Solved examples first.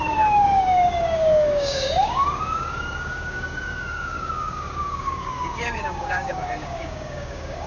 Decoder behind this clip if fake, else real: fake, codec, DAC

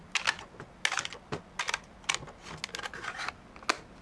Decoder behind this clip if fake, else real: real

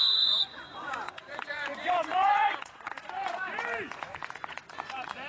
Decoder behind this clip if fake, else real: fake, vocoder, Vocos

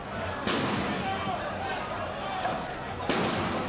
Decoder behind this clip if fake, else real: real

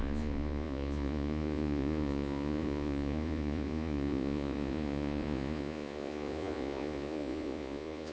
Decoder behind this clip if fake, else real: fake, vocoder, Vocos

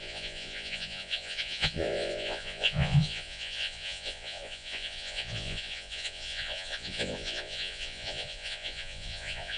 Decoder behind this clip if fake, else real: fake, vocoder, Vocos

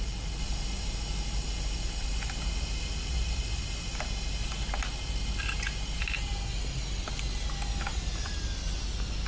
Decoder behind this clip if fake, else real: real